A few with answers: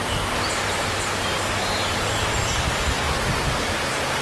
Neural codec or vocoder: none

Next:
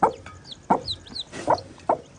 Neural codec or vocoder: none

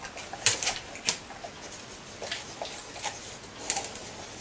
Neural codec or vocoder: none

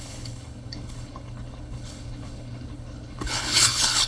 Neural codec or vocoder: codec, HILCodec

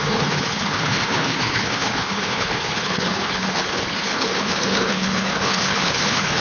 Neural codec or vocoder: codec, HILCodec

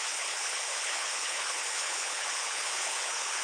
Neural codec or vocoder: codec, HILCodec